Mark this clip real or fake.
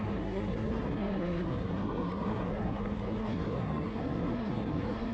fake